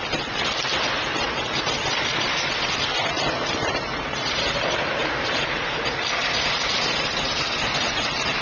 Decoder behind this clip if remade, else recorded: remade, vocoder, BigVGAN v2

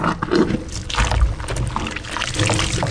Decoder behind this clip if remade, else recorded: recorded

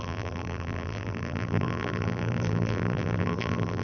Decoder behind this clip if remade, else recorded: remade, vocoder, BigVGAN v2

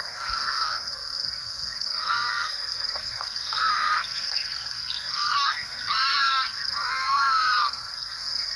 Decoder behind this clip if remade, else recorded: remade, codec, SNAC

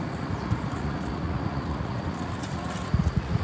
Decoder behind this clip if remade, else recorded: remade, vocoder, Vocos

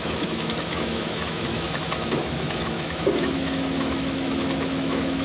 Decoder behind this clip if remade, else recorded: remade, autoencoder, DAC-VAE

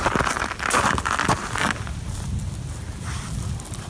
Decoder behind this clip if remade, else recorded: recorded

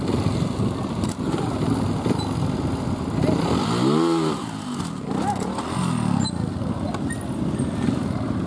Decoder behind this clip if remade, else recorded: recorded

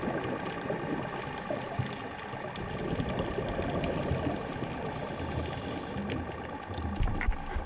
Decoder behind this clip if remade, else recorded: recorded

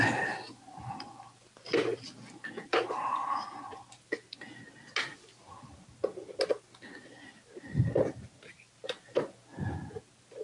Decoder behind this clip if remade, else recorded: recorded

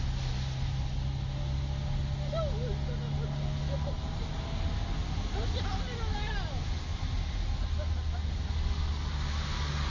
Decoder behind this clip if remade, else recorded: recorded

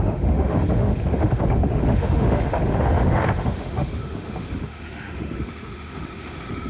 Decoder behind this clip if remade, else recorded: remade, autoencoder, DAC-VAE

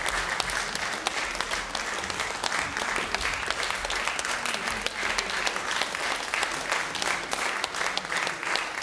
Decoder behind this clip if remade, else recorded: recorded